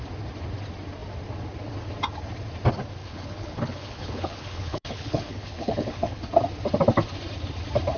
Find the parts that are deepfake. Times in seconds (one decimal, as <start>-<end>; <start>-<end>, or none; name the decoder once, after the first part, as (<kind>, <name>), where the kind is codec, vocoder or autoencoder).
3.0-6.2 (codec, HILCodec)